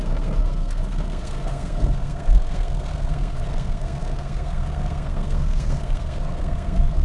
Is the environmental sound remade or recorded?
remade